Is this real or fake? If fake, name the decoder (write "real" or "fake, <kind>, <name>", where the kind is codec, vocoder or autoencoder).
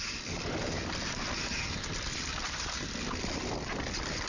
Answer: fake, vocoder, BigVGAN v2